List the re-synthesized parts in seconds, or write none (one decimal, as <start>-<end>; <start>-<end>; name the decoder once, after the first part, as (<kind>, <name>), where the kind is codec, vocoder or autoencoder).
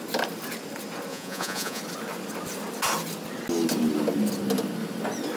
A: 1.1-1.8 (vocoder, Vocos)